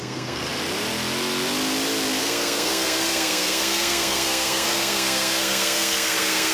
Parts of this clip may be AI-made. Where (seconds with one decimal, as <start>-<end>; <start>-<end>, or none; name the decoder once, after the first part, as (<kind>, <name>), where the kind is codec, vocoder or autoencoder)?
0.0-0.5 (codec, SNAC); 2.2-6.5